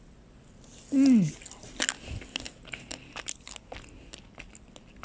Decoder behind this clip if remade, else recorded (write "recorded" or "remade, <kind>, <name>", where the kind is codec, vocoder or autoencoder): recorded